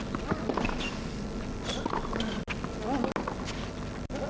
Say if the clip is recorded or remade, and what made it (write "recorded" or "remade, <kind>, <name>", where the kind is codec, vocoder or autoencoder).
recorded